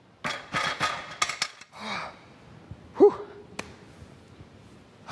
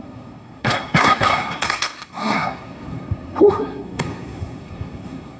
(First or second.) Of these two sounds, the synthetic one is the second